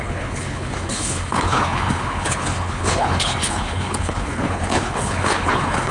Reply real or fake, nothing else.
fake